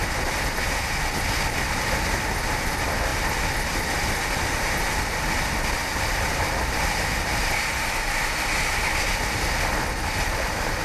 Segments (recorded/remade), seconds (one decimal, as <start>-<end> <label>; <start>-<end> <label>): 0.0-10.8 recorded

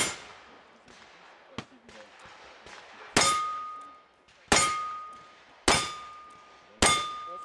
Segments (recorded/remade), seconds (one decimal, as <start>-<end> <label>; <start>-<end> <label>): 0.0-7.4 recorded

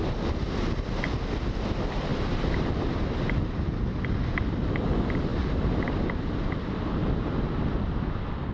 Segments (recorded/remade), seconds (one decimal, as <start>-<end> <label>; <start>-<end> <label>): 0.0-5.3 recorded; 5.3-6.0 remade; 6.0-8.5 recorded

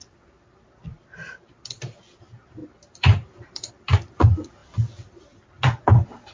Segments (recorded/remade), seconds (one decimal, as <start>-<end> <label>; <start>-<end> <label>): 0.0-2.6 recorded; 2.6-3.7 remade; 3.7-6.3 recorded

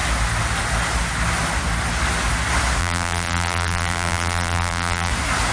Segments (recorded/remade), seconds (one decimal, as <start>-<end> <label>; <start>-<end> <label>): 0.0-2.8 recorded; 2.8-5.1 remade; 5.1-5.5 recorded

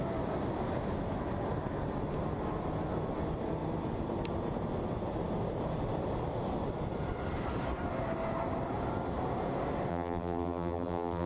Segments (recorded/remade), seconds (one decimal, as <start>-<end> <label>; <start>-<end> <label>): 0.0-9.9 recorded; 9.9-11.3 remade